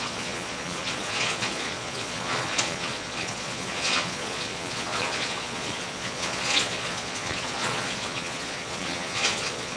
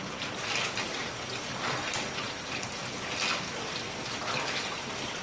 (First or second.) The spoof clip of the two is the first